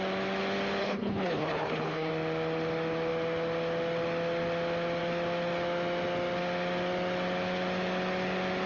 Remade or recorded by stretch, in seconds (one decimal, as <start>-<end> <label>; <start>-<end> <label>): 0.0-0.8 recorded; 0.8-2.1 remade; 2.1-8.7 recorded